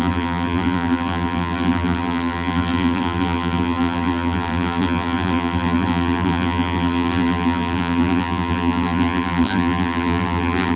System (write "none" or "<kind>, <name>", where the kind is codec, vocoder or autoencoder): vocoder, BigVGAN v2